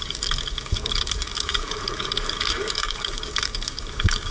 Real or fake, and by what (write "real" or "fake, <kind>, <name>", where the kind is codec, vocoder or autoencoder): fake, codec, DAC